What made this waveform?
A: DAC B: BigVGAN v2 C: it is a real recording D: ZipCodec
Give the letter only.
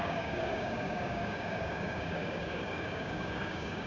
A